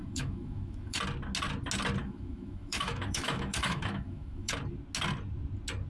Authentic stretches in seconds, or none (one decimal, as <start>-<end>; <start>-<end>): 1.0-2.0; 4.5-5.9